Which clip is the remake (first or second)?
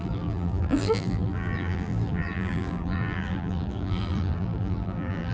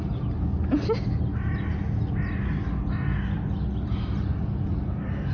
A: first